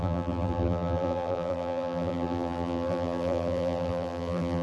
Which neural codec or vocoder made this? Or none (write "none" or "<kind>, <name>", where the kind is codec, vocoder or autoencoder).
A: vocoder, BigVGAN v2